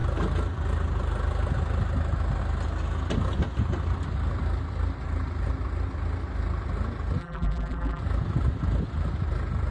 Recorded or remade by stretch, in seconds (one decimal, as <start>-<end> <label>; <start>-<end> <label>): 0.0-7.2 recorded; 7.2-8.0 remade; 8.0-9.7 recorded